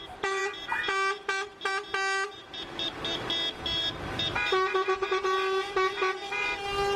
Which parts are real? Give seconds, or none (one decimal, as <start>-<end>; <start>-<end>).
0.0-7.0